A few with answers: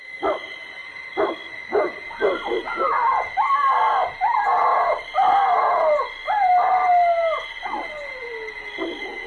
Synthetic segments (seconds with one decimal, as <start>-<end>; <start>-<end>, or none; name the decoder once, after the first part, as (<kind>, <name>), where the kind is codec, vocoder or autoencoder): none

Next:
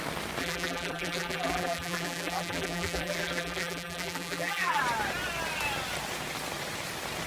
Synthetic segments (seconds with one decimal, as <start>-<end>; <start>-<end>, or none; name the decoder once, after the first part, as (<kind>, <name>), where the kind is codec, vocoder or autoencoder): 0.4-4.8 (vocoder, BigVGAN v2)

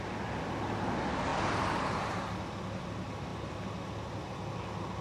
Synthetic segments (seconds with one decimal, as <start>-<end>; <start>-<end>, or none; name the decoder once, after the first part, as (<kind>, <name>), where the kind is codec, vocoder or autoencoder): 3.3-4.3 (vocoder, BigVGAN v2)

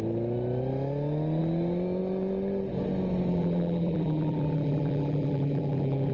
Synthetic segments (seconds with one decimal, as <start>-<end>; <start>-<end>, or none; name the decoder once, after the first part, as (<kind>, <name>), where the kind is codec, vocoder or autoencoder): 3.3-6.1 (vocoder, BigVGAN v2)